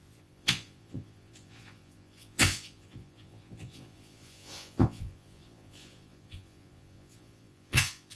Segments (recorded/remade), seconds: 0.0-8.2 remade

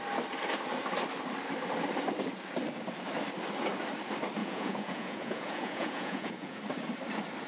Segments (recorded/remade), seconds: 0.0-4.4 recorded; 4.4-6.6 remade; 6.6-7.5 recorded

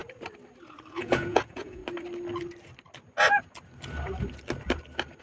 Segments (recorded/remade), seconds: 0.0-0.9 recorded; 0.9-1.8 remade; 1.8-5.2 recorded

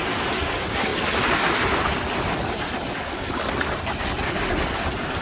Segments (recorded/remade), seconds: 0.0-5.2 recorded

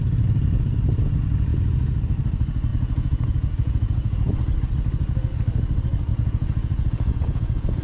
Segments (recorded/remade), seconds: 0.0-1.5 recorded; 1.5-2.0 remade; 2.0-2.7 recorded; 2.7-4.3 remade; 4.3-6.1 recorded; 6.1-7.8 remade